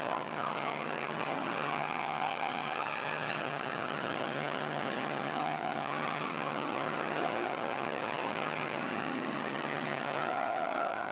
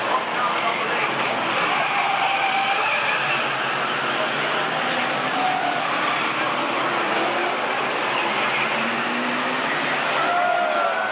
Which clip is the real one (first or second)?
second